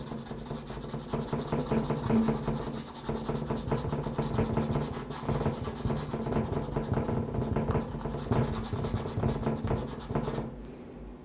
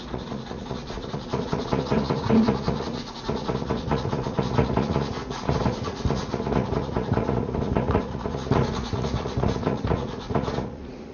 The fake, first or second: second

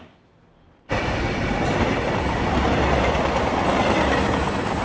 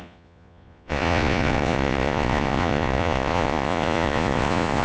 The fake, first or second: second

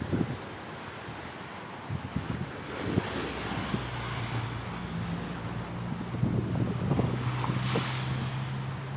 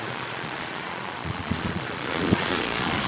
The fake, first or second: second